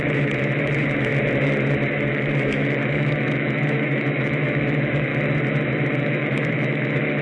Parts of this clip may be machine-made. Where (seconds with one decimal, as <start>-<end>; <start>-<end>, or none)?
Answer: 0.0-1.1; 1.9-5.1; 6.0-7.2